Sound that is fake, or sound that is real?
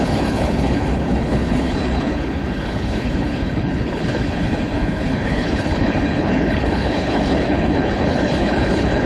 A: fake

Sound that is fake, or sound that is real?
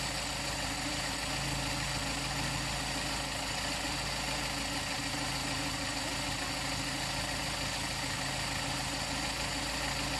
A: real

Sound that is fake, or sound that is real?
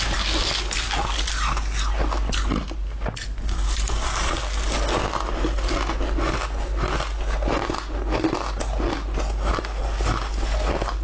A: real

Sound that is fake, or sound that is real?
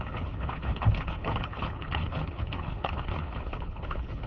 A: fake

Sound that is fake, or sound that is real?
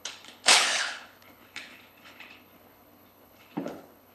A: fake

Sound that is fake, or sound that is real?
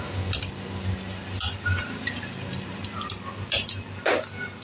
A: real